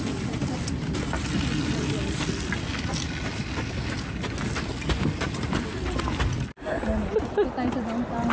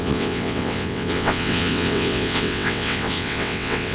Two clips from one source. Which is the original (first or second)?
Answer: first